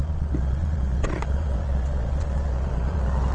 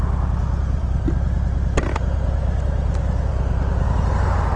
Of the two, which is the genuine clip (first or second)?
second